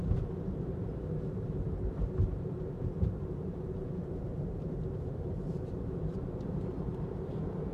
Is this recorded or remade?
remade